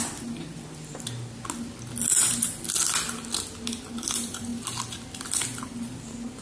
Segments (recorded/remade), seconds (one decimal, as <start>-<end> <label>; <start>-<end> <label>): 0.0-6.4 recorded